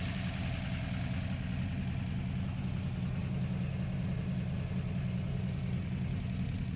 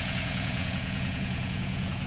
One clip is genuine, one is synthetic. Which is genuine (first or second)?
first